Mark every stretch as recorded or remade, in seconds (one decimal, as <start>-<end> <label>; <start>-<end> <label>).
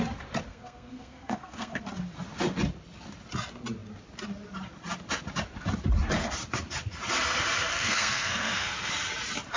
0.0-0.5 recorded; 0.5-1.8 remade; 1.8-7.7 recorded; 7.7-8.9 remade; 8.9-9.6 recorded